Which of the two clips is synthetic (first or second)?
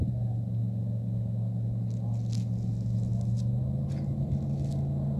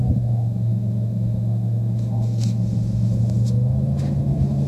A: second